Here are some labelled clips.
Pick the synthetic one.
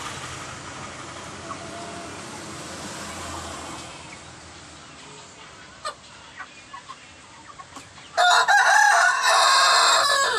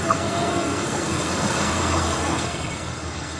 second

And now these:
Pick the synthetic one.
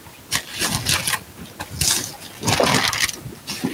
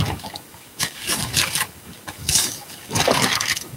second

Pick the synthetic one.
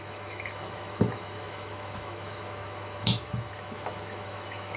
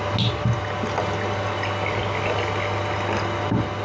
first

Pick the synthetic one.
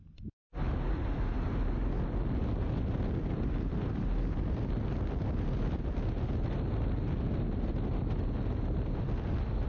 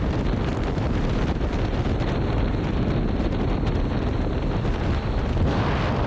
second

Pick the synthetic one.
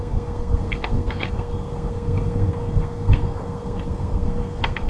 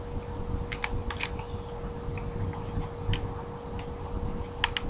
first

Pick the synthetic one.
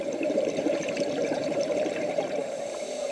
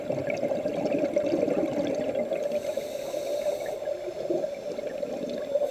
first